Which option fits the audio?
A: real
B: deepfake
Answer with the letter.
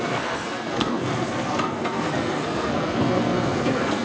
B